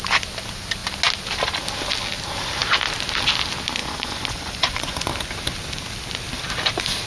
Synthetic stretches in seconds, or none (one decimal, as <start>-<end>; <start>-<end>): 3.8-5.1